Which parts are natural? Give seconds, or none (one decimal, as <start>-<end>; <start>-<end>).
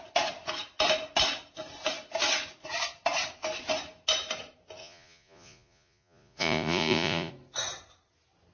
0.0-4.8; 7.3-8.5